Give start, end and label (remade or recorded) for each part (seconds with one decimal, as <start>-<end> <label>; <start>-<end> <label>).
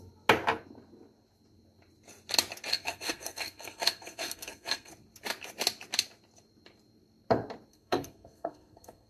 0.0-2.7 recorded; 2.7-4.9 remade; 4.9-7.7 recorded; 7.7-9.1 remade